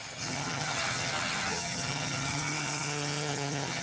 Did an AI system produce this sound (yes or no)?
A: yes